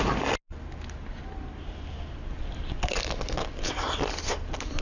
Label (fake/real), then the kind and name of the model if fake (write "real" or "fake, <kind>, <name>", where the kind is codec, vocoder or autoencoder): real